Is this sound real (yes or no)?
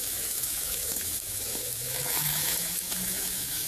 no